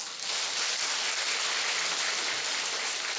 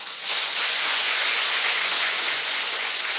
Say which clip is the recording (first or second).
first